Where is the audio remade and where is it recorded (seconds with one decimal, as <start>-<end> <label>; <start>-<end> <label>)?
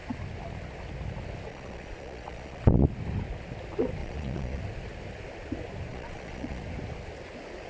0.0-1.5 recorded; 1.5-2.9 remade; 2.9-4.0 recorded; 4.0-4.6 remade; 4.6-5.9 recorded; 5.9-6.6 remade; 6.6-7.7 recorded